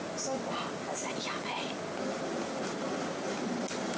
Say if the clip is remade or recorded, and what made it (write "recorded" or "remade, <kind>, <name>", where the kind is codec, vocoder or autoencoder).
recorded